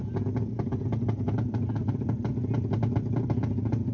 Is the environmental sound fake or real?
real